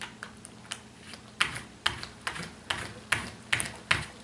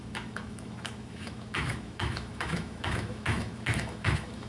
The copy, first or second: second